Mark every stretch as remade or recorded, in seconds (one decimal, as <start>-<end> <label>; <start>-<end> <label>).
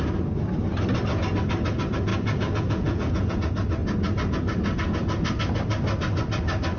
0.0-2.1 recorded; 2.1-3.4 remade; 3.4-6.8 recorded